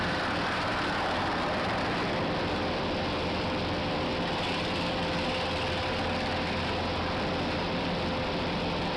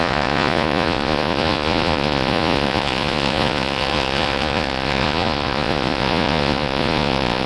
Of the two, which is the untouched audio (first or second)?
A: first